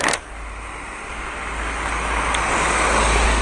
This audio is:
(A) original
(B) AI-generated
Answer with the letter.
A